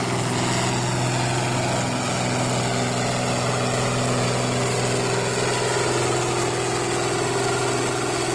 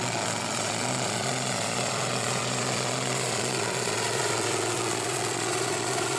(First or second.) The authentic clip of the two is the first